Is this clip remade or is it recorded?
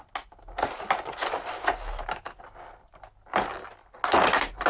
recorded